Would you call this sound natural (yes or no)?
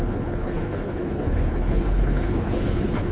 no